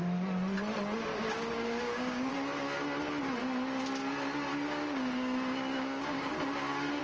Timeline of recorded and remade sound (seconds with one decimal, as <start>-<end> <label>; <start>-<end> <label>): 0.0-1.1 recorded; 1.1-2.3 remade; 2.3-4.5 recorded; 4.5-7.0 remade